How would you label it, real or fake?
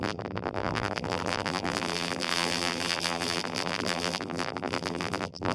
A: fake